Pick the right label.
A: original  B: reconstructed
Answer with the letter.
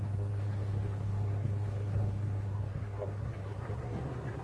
B